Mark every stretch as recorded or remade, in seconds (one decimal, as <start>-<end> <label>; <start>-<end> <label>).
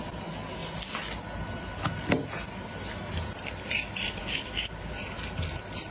0.0-4.2 recorded; 4.2-4.9 remade; 4.9-5.9 recorded